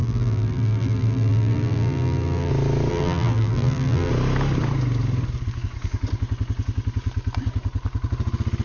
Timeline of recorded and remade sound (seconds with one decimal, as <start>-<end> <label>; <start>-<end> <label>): 0.0-2.5 remade; 2.5-2.9 recorded; 2.9-4.1 remade; 4.1-8.6 recorded